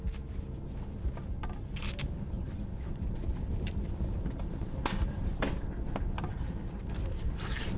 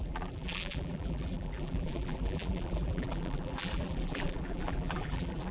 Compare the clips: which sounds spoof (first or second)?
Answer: second